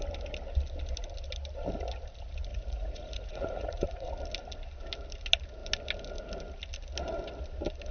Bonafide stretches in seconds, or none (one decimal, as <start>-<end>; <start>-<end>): 0.0-2.5; 4.1-7.9

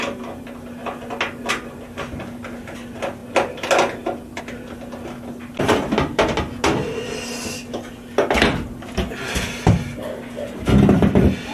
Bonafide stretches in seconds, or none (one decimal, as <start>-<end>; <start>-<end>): 0.0-11.5

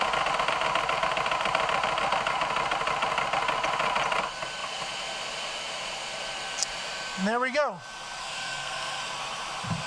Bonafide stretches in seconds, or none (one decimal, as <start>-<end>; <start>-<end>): 0.0-8.2; 9.0-9.9

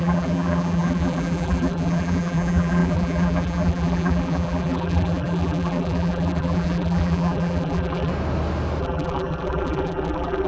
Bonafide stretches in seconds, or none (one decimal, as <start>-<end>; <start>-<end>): 8.1-8.8

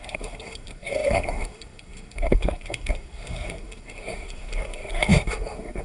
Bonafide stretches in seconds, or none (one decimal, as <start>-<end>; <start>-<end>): none

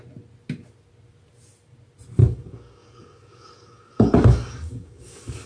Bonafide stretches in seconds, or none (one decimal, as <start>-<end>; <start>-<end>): 0.0-2.2

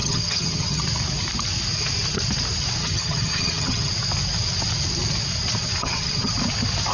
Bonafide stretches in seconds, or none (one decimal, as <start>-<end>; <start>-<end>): 0.8-2.8; 3.9-5.8; 6.3-6.9

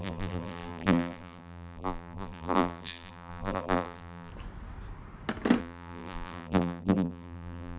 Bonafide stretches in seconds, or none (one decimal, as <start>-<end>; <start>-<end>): 4.3-5.6